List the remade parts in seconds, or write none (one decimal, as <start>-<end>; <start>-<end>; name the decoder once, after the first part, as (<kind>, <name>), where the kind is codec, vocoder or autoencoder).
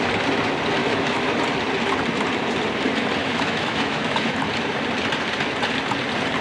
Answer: 0.8-1.3 (autoencoder, DAC-VAE); 3.2-4.3